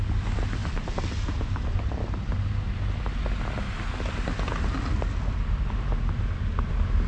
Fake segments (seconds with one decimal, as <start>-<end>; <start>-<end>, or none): none